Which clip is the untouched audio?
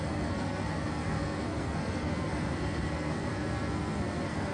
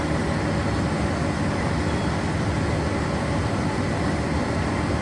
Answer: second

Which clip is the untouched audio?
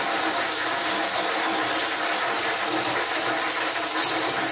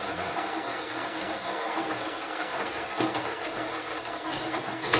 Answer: first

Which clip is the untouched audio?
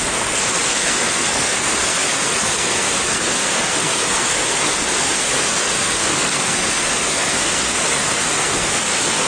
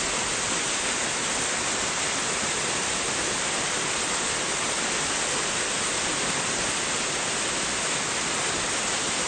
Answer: second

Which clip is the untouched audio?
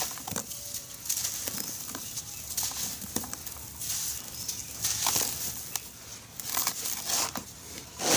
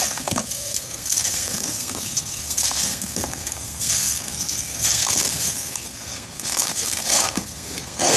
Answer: first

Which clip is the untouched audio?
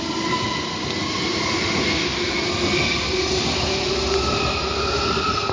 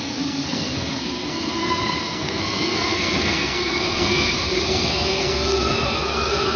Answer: first